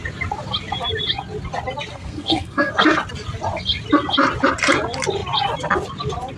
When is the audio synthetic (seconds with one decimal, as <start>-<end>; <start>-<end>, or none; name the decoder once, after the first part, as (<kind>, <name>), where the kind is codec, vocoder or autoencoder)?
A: 1.9-2.7 (codec, SNAC)